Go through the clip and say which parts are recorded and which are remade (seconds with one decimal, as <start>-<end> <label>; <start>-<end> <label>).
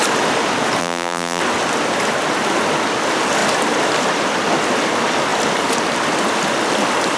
0.0-0.8 recorded; 0.8-1.4 remade; 1.4-7.2 recorded